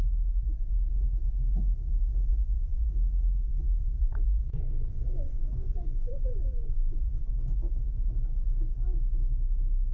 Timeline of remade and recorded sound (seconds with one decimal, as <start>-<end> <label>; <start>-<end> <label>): 0.0-2.3 recorded; 2.3-2.9 remade; 2.9-4.0 recorded; 4.0-7.3 remade; 7.3-9.9 recorded